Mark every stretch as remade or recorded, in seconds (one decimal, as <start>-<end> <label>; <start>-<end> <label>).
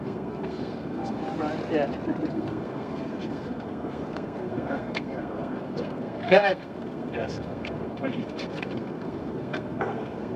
0.0-1.2 remade; 1.2-2.3 recorded; 2.3-10.4 remade